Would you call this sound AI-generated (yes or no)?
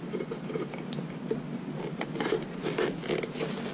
no